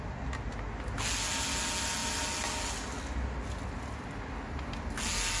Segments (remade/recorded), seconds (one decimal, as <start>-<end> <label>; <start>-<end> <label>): 0.0-5.4 recorded

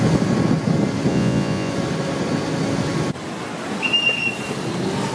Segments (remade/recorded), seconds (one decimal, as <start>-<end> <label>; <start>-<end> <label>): 0.0-1.1 recorded; 1.1-1.7 remade; 1.7-5.1 recorded